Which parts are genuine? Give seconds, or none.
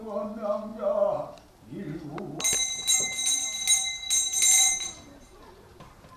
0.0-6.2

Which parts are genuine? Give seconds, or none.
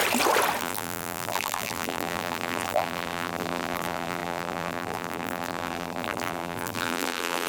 0.0-0.6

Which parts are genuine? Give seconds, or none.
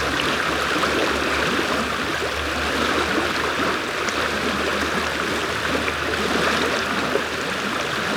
0.0-8.2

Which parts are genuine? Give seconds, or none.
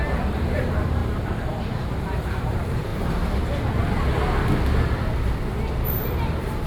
2.9-5.9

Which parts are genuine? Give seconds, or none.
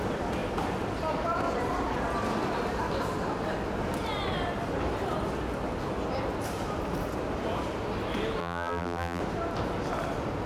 0.0-8.4; 9.2-10.5